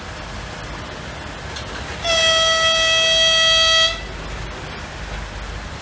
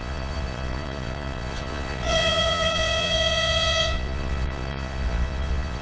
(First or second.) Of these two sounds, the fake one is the second